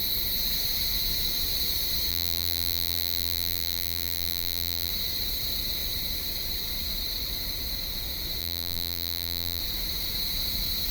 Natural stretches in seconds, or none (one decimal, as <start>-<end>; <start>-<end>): 0.0-2.1; 4.9-8.4; 9.6-10.9